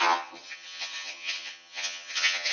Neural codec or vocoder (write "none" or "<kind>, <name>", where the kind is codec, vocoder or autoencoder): vocoder, HiFi-GAN